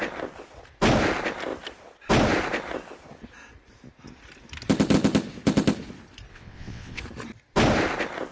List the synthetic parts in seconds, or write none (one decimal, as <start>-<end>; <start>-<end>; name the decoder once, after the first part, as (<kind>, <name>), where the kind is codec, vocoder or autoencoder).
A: 6.3-7.0 (vocoder, WaveNeXt)

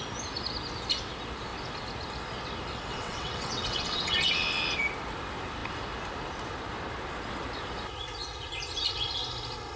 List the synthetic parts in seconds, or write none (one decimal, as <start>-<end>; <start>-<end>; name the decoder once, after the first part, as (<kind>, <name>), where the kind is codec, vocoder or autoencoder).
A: 2.9-4.3 (vocoder, WaveNeXt)